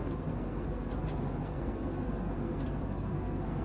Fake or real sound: fake